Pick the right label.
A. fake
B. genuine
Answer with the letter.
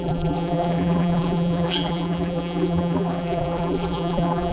A